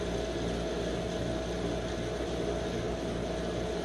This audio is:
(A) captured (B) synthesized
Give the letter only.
A